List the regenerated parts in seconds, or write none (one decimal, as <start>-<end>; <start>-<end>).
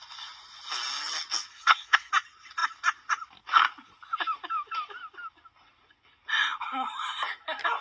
1.5-2.1